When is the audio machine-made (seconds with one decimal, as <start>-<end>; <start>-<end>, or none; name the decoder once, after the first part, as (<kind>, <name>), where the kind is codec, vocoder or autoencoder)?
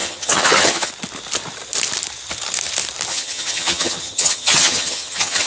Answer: 0.0-0.9 (vocoder, HiFi-GAN); 3.1-5.5